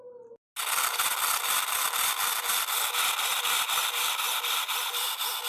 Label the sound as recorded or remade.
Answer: recorded